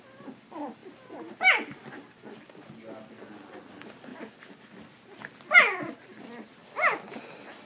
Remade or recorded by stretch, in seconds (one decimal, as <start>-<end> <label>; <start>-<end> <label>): 0.0-7.7 recorded